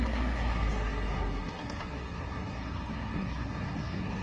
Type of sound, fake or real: fake